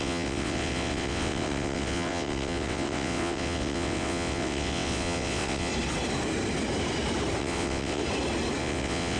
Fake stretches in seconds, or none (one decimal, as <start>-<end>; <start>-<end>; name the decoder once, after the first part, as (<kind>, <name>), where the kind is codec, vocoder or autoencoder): 0.0-5.7 (vocoder, WaveNeXt); 7.4-8.0; 8.6-9.2